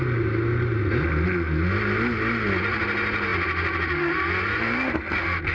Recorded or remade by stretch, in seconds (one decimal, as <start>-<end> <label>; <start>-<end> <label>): 0.0-5.5 recorded

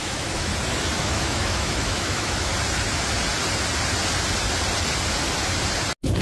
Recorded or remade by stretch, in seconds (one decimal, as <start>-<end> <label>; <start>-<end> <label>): 0.0-0.5 remade; 0.5-1.0 recorded; 1.0-2.5 remade; 2.5-6.2 recorded

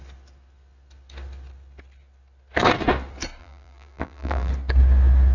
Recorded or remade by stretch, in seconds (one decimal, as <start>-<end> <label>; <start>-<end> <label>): 0.0-3.4 recorded; 3.4-4.5 remade; 4.5-5.3 recorded

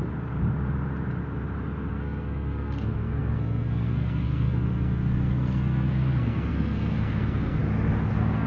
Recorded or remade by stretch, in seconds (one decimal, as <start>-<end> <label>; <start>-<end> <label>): 0.0-1.9 recorded; 1.9-7.6 remade; 7.6-8.1 recorded; 8.1-8.5 remade